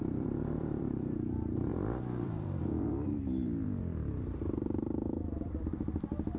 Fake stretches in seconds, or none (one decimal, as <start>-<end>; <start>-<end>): 0.0-6.4